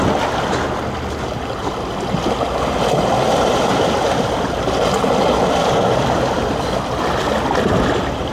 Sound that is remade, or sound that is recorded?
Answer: recorded